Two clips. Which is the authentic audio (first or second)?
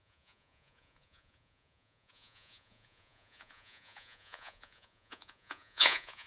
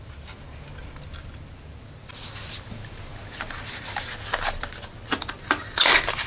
second